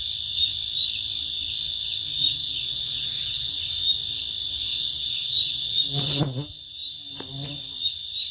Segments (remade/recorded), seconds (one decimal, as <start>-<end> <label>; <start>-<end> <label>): 0.0-2.2 recorded; 2.2-3.5 remade; 3.5-4.7 recorded; 4.7-6.2 remade; 6.2-8.3 recorded